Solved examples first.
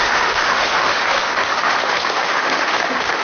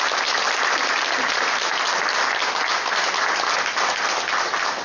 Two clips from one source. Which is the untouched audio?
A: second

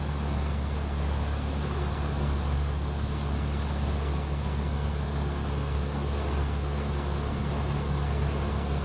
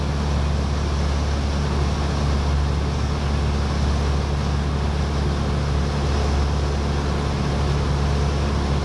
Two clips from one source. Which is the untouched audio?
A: second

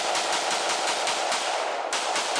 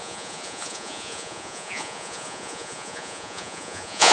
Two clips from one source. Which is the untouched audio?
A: first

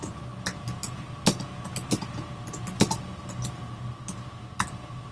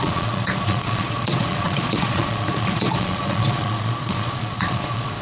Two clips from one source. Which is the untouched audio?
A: first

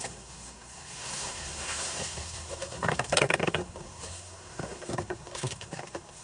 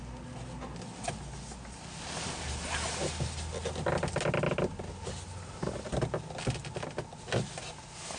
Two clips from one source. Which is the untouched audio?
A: second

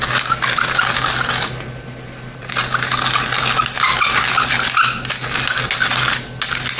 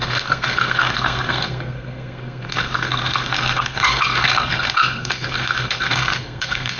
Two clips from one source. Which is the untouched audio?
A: first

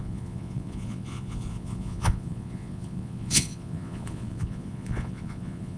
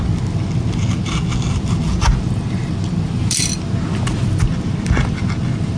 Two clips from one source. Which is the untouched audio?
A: second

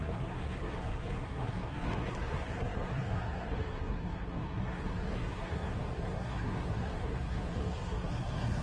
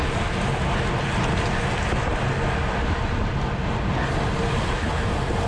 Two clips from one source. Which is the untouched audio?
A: second